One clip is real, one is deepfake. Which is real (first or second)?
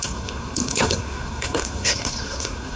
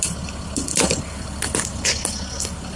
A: second